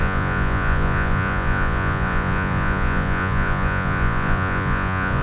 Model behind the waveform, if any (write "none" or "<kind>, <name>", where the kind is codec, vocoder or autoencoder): vocoder, Vocos